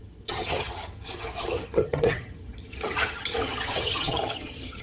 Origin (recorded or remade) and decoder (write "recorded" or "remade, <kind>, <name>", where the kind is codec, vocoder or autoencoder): remade, vocoder, HiFi-GAN